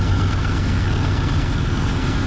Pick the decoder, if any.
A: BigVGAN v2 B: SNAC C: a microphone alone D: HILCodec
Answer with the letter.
B